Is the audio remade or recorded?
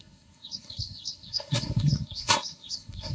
remade